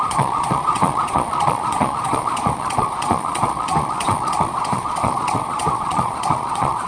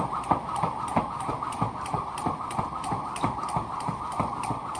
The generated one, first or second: first